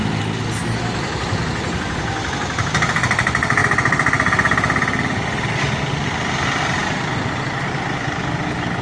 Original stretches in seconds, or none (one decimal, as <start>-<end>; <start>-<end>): 0.0-8.8